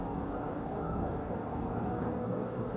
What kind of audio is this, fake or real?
fake